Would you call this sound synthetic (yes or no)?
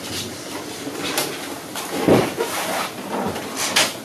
no